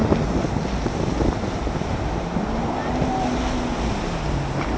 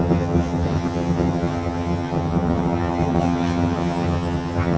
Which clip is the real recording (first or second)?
first